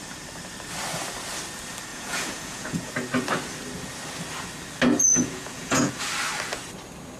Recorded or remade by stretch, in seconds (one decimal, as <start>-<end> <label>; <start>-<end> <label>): 0.0-1.9 recorded; 1.9-2.9 remade; 2.9-5.1 recorded; 5.1-5.9 remade; 5.9-7.2 recorded